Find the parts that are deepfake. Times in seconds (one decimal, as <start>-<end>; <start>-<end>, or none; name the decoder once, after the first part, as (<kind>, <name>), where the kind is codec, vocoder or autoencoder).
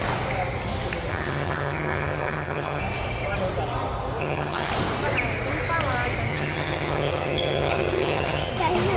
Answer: 1.1-2.8 (vocoder, HiFi-GAN); 4.2-4.7; 6.3-8.5